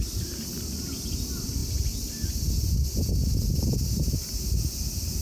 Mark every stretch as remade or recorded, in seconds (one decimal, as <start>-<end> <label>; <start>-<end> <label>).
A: 0.0-5.2 recorded